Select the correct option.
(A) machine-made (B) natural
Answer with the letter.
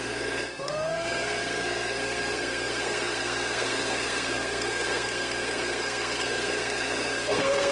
A